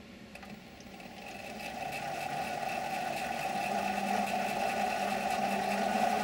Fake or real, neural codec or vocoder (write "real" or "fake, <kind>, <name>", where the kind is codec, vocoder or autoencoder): real